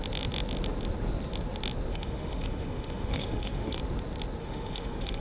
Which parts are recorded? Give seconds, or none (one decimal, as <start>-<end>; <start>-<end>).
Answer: 0.0-1.9; 3.8-4.4